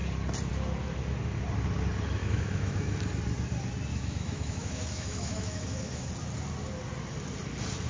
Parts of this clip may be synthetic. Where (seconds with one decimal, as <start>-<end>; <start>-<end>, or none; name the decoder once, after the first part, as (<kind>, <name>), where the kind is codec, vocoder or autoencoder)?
2.2-3.0 (autoencoder, DAC-VAE); 3.9-6.1